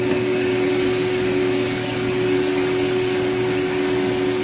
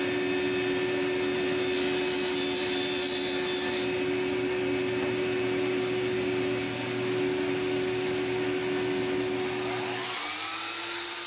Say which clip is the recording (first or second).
second